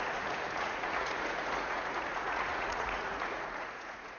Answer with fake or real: fake